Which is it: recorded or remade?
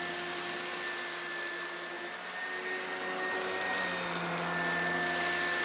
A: recorded